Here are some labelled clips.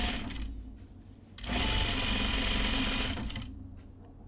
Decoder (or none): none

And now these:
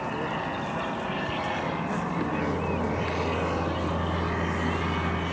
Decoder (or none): none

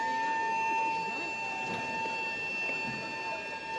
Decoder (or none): none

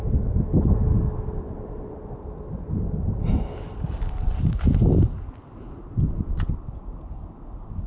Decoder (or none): none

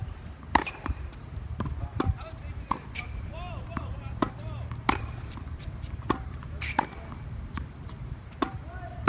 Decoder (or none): vocoder, BigVGAN v2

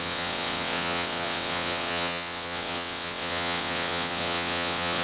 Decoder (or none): vocoder, WaveNeXt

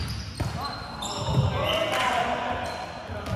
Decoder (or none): none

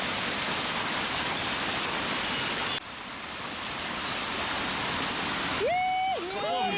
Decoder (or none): none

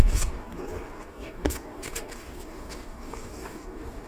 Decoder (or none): codec, DAC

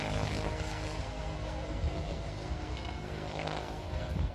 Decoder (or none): codec, SNAC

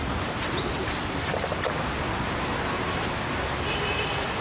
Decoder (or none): none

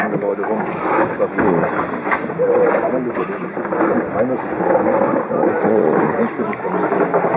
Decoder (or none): none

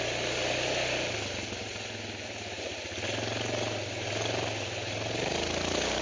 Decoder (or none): none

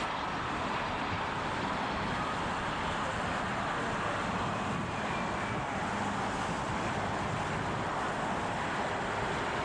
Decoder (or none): none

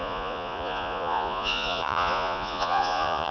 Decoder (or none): vocoder, Vocos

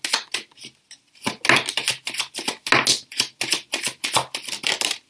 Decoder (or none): none